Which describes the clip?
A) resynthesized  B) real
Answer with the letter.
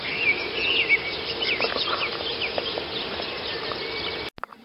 B